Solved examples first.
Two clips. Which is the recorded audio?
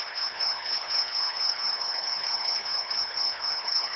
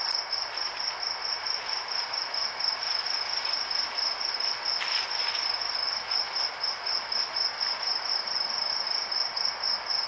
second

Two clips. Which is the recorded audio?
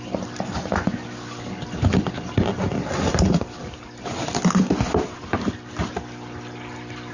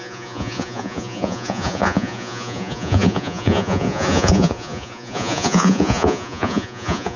first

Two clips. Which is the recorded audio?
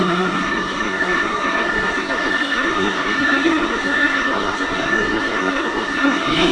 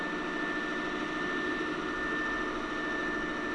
second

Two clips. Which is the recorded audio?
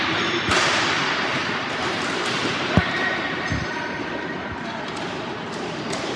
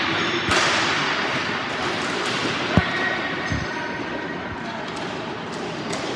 second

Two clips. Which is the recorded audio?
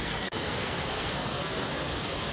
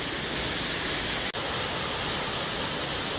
second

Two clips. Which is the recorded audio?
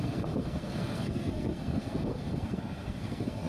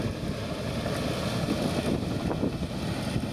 second